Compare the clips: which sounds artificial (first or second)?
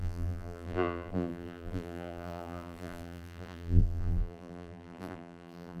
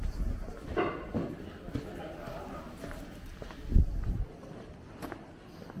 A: first